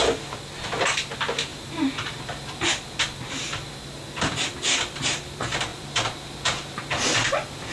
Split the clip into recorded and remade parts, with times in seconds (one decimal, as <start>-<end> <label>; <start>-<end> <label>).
0.0-5.7 recorded; 5.7-6.8 remade; 6.8-7.7 recorded